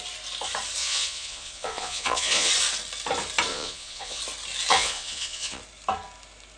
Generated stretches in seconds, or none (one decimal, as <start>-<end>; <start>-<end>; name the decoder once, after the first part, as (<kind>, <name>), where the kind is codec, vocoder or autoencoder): 0.8-2.5 (vocoder, Vocos); 3.5-4.2; 4.7-5.6